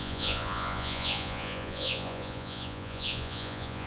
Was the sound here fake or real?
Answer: fake